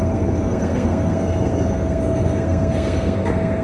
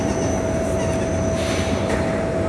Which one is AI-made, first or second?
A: first